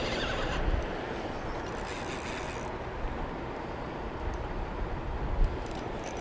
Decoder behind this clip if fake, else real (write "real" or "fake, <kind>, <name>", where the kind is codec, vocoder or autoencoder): real